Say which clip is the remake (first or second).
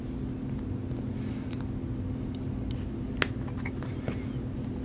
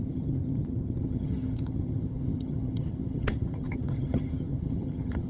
second